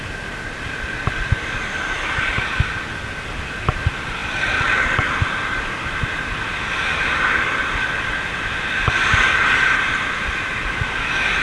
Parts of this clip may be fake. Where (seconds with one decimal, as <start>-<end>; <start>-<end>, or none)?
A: none